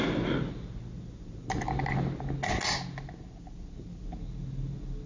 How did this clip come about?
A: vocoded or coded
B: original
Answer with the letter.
B